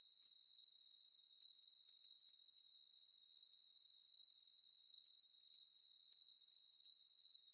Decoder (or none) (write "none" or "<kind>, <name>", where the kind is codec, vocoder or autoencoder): vocoder, BigVGAN v2